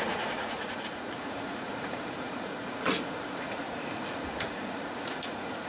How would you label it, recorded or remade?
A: remade